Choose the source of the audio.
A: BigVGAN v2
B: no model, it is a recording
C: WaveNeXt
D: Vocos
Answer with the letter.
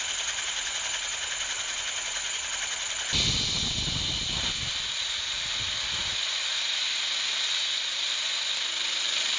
B